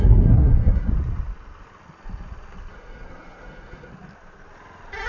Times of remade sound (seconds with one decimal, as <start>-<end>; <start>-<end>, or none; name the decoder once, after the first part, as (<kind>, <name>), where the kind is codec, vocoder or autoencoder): 0.0-0.9 (codec, SNAC); 2.7-3.9